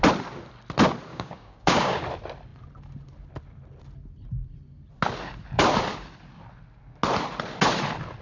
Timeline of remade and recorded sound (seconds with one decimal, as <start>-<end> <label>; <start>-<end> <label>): 0.0-1.1 recorded; 1.1-2.0 remade; 2.0-8.2 recorded